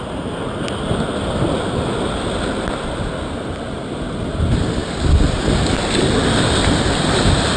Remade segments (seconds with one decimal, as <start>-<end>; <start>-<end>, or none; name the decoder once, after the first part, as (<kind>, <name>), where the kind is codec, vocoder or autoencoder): none